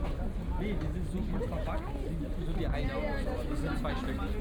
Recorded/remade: recorded